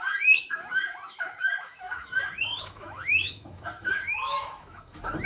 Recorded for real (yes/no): no